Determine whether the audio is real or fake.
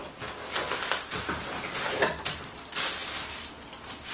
real